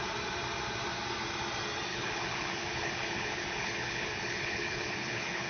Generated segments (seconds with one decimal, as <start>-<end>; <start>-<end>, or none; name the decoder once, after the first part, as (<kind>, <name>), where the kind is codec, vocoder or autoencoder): 1.9-5.5 (codec, HILCodec)